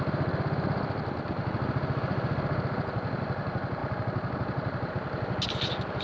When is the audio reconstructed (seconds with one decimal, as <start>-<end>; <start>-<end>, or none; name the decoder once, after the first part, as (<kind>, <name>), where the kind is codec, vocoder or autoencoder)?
none